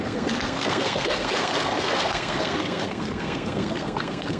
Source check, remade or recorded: remade